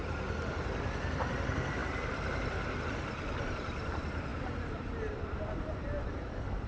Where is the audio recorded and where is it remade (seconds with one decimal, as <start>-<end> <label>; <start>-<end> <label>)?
0.0-0.5 recorded; 0.5-6.7 remade